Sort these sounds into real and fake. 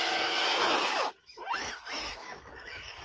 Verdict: fake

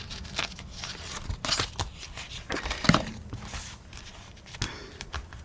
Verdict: real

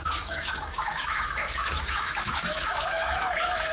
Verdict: fake